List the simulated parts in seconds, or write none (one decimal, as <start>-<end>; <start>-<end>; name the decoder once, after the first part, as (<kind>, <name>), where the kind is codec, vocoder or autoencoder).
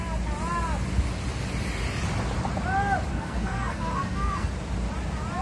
3.1-4.5 (codec, SNAC)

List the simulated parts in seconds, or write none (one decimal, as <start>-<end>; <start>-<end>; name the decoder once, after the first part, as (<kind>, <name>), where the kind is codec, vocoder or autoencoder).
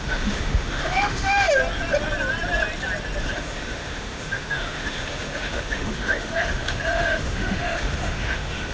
0.0-1.6 (autoencoder, DAC-VAE); 3.2-8.7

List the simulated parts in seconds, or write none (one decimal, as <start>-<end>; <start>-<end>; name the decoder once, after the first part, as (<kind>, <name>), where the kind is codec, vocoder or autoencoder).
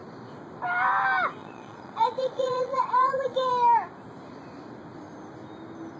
1.4-3.5 (vocoder, Vocos)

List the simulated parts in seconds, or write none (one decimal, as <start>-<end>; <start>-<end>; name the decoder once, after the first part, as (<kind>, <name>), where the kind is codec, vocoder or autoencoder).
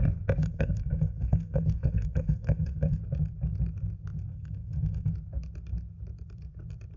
0.4-3.0 (codec, SNAC); 4.3-5.1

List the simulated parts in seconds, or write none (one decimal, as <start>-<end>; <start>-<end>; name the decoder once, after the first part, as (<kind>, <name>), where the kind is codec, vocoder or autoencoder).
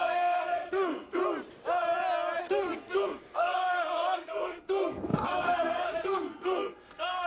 0.0-1.2 (codec, SNAC); 2.4-7.3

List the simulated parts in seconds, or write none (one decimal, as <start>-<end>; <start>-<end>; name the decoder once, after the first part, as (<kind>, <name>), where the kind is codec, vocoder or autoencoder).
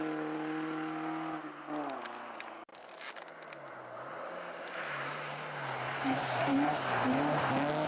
none